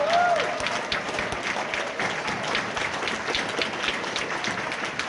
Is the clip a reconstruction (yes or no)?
no